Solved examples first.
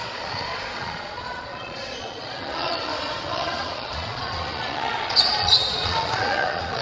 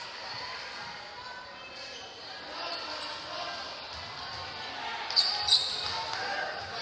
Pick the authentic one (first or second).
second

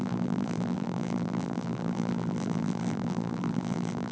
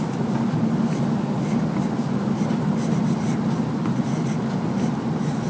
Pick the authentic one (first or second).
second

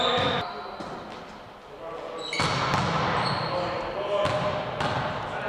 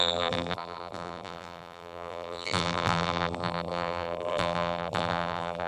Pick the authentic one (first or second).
first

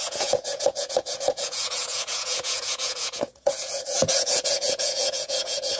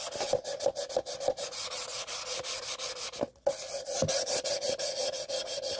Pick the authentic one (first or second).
second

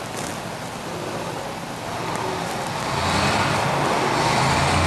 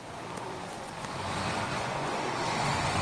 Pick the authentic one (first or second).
first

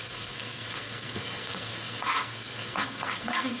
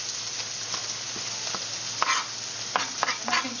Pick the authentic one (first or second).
second